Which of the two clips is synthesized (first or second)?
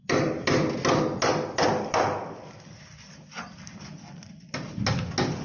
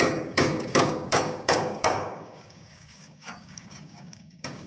second